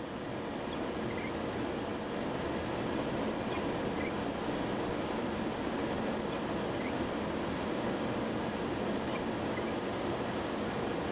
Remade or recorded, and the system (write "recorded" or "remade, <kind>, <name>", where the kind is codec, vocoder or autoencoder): recorded